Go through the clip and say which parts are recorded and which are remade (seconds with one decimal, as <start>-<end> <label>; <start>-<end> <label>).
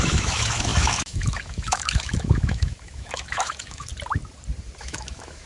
0.0-3.9 remade; 3.9-4.8 recorded; 4.8-5.5 remade